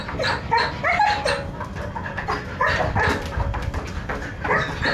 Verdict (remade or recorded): recorded